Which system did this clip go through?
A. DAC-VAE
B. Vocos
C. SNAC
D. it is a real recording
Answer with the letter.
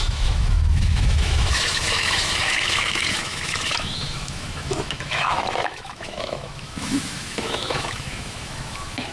A